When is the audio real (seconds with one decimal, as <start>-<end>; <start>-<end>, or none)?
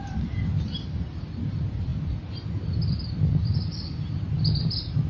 1.9-4.6